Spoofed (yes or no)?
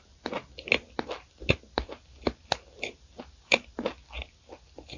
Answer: no